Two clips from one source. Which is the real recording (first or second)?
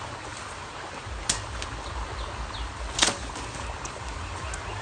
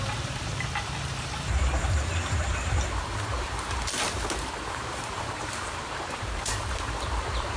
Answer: first